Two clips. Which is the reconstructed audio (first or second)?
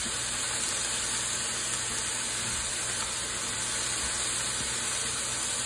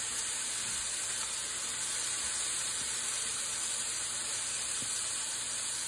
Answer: second